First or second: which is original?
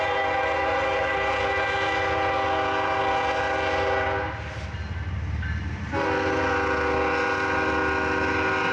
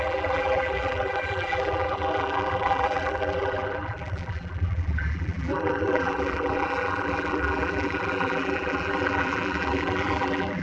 first